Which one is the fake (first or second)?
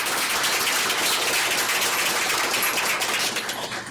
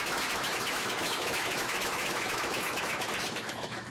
second